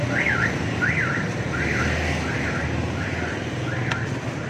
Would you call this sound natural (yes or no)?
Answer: yes